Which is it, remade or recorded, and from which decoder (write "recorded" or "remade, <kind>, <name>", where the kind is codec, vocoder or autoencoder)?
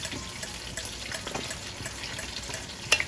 recorded